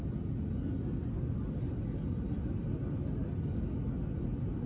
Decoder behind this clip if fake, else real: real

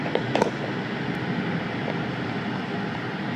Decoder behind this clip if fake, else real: real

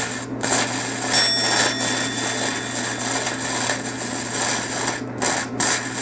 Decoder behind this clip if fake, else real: real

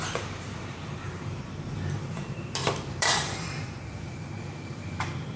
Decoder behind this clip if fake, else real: fake, vocoder, BigVGAN v2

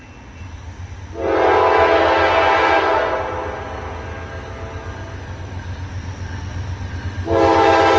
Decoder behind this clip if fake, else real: real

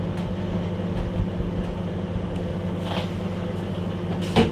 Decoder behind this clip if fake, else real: real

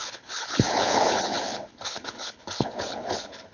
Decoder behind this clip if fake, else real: fake, codec, HILCodec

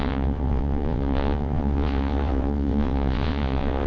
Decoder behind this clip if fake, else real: fake, vocoder, WaveNeXt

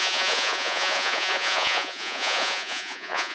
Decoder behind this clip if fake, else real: fake, vocoder, Vocos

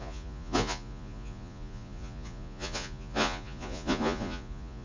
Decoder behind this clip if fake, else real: fake, vocoder, Vocos